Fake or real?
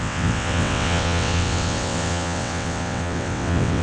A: fake